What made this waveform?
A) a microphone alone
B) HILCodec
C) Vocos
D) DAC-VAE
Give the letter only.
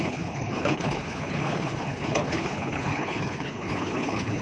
B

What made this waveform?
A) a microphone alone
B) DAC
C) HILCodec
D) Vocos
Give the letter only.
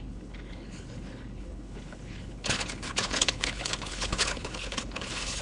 C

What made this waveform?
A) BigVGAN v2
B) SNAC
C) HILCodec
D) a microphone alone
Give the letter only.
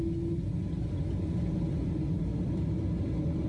D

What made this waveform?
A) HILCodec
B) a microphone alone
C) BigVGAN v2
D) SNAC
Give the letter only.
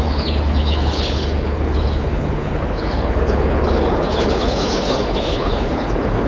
A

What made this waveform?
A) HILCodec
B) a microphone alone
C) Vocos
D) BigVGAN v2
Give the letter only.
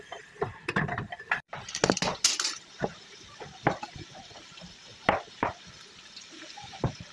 B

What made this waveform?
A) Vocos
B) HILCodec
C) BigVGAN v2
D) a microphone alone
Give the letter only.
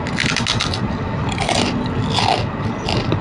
D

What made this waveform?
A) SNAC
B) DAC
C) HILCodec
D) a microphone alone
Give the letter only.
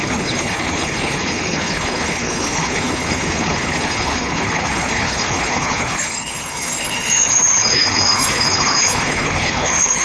C